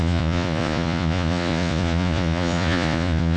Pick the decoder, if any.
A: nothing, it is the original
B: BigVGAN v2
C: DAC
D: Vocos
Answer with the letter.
D